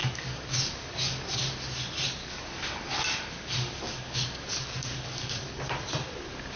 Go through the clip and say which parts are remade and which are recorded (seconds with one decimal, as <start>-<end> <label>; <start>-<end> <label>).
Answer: 0.0-1.6 remade; 1.6-2.2 recorded; 2.2-5.7 remade; 5.7-6.6 recorded